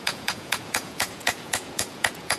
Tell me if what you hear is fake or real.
fake